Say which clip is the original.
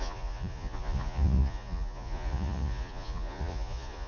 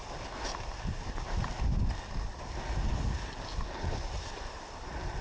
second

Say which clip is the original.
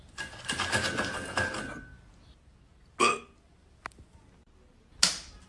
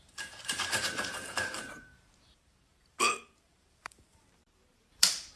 first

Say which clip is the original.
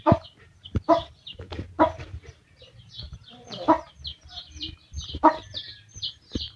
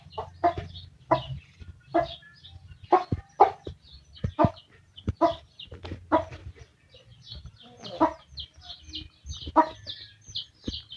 second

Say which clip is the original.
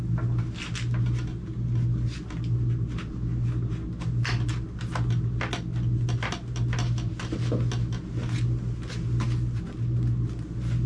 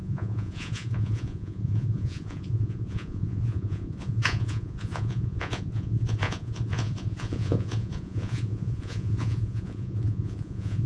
first